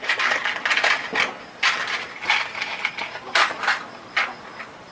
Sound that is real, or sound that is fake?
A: real